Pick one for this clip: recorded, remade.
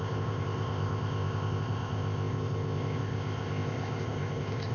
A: remade